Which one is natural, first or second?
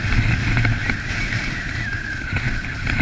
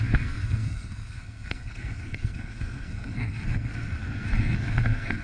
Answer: first